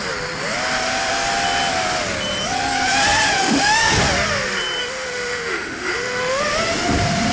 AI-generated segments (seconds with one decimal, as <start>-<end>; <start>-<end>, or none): 3.4-4.0; 4.8-6.4